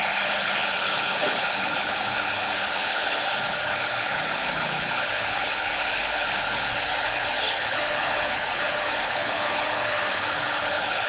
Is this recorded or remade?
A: remade